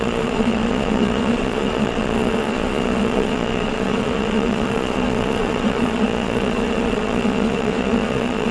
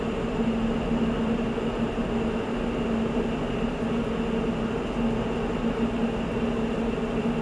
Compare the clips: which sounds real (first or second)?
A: second